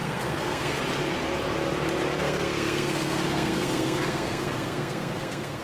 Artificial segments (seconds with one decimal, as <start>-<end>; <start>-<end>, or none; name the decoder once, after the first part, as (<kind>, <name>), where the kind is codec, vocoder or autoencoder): 0.0-0.8 (codec, SNAC); 2.2-5.6